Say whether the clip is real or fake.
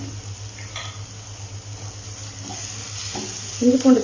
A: real